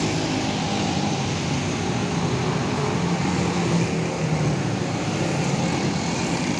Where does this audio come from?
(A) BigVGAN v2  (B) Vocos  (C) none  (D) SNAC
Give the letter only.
C